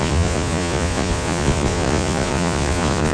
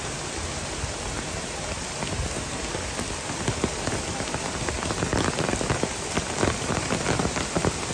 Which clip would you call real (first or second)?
second